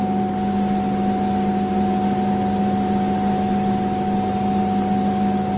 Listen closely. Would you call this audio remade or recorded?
recorded